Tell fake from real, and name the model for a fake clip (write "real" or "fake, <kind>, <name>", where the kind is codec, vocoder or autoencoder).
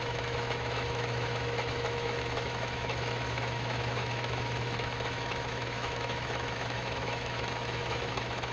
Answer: fake, autoencoder, DAC-VAE